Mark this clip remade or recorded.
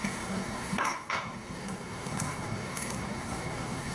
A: remade